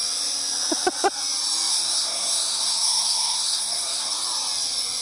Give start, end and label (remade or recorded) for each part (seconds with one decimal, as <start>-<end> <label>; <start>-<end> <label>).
0.0-1.7 recorded; 1.7-4.1 remade; 4.1-5.0 recorded